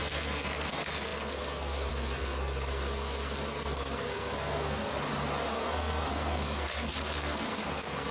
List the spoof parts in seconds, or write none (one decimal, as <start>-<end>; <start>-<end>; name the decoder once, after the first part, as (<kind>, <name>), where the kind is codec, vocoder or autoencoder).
0.0-4.9 (codec, SNAC); 5.5-8.1